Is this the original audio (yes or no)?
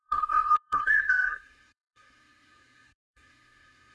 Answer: no